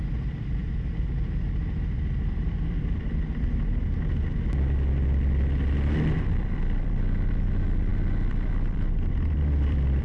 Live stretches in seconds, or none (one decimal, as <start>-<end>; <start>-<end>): 0.6-1.6; 3.3-6.4